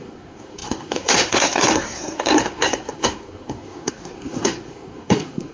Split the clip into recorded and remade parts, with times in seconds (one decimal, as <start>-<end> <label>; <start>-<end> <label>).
0.0-5.5 remade